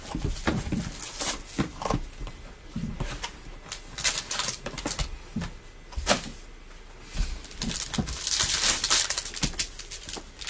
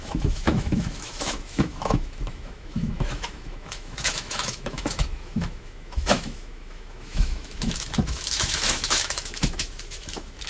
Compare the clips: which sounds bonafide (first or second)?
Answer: first